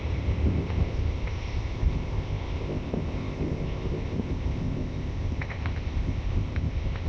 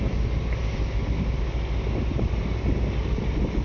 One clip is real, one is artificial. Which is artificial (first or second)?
first